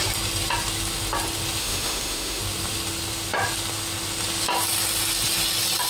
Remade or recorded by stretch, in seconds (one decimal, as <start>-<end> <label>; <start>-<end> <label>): 0.0-1.6 recorded; 1.6-2.4 remade; 2.4-5.9 recorded